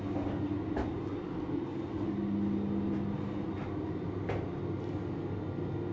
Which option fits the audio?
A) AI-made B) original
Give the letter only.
B